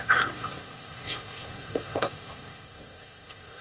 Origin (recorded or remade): remade